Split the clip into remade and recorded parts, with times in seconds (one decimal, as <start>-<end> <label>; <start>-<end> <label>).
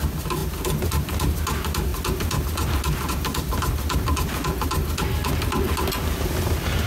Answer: 0.0-6.9 recorded